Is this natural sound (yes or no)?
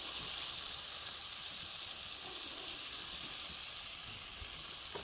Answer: yes